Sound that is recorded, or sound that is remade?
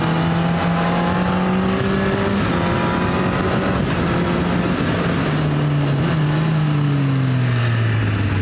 recorded